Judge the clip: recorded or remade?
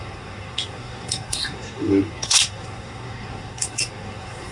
remade